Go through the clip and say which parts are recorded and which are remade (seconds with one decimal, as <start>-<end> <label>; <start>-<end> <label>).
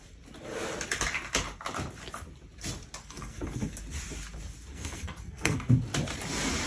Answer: 0.0-3.0 recorded; 3.0-3.8 remade; 3.8-4.7 recorded; 4.7-5.7 remade; 5.7-6.7 recorded